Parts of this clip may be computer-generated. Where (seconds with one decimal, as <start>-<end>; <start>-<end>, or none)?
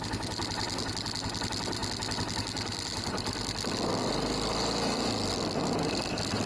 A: none